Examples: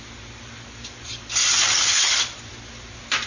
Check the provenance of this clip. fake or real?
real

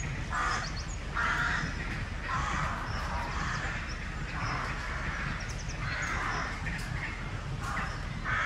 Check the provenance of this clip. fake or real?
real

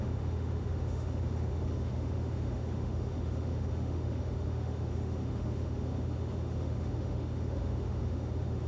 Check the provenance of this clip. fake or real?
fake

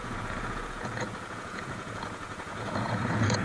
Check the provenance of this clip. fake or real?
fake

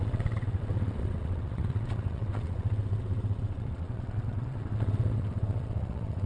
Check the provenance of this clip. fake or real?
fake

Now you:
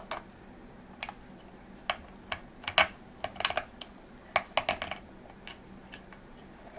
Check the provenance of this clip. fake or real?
real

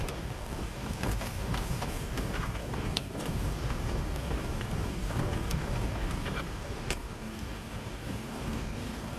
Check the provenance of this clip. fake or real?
fake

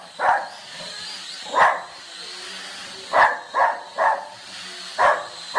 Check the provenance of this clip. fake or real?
real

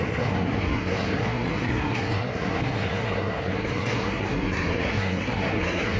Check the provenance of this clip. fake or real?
fake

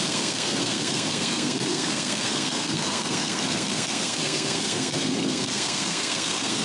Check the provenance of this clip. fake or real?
fake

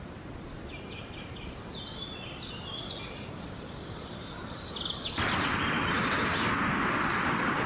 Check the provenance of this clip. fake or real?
fake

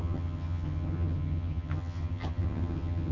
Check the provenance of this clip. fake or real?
fake